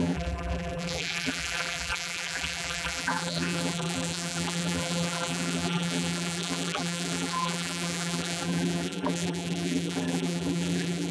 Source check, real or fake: fake